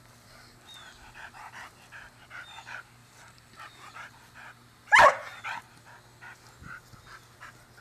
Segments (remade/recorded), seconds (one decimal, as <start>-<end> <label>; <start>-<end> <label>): 0.0-3.0 recorded; 3.0-5.1 remade; 5.1-7.8 recorded